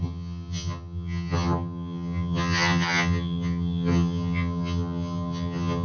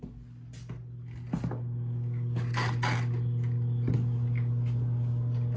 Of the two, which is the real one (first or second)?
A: second